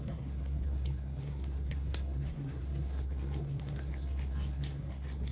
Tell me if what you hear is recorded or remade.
remade